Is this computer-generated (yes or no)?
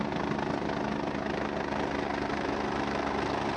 no